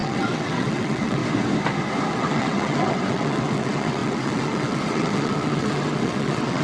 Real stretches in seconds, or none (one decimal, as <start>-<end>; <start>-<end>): 1.2-2.1